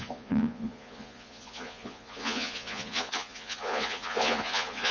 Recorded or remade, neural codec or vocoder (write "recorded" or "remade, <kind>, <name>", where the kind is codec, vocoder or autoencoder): remade, vocoder, Vocos